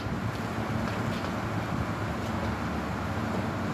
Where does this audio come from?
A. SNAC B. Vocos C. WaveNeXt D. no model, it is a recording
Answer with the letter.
D